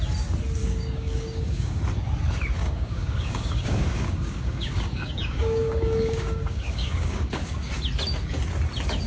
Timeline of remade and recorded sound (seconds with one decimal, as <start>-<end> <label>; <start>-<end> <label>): 0.0-0.6 recorded; 0.6-1.8 remade; 1.8-2.6 recorded; 2.6-7.7 remade; 7.7-9.1 recorded